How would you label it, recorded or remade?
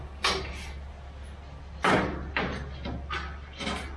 recorded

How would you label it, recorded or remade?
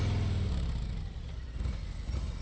recorded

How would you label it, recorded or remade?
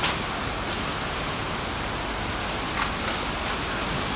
recorded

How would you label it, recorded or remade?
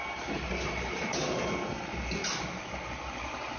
recorded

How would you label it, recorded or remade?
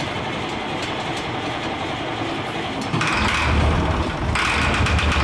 recorded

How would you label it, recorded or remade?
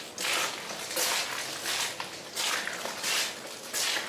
recorded